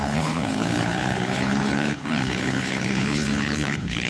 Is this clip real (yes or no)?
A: no